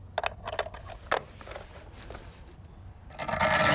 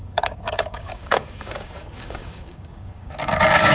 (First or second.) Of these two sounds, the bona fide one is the first